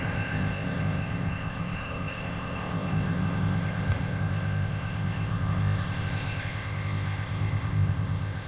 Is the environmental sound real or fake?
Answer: fake